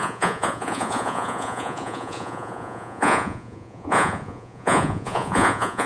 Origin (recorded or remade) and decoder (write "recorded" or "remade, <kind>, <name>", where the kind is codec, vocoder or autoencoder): remade, vocoder, Vocos